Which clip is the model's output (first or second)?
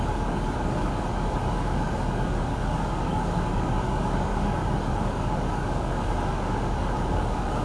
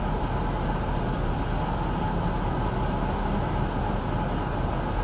first